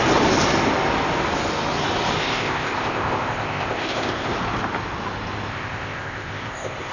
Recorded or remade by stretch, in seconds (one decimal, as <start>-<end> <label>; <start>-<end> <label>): 0.0-2.2 recorded; 2.2-4.3 remade; 4.3-5.5 recorded; 5.5-6.9 remade